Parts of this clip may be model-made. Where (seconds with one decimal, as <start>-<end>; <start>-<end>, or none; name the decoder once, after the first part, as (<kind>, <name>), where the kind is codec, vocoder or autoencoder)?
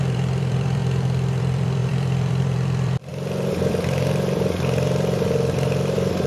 0.0-0.8 (vocoder, BigVGAN v2); 1.4-3.1; 3.7-6.3